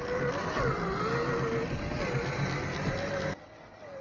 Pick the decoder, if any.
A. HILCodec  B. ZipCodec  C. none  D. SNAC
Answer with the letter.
C